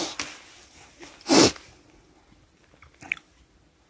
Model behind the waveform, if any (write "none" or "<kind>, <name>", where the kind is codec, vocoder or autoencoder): none